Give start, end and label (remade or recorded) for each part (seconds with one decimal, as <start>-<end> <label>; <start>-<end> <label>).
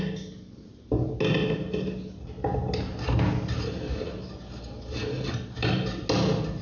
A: 0.0-6.6 recorded